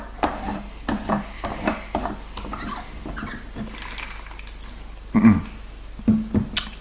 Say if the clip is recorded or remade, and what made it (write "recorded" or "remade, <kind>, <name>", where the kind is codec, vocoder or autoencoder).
recorded